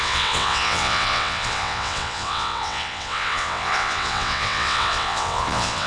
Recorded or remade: remade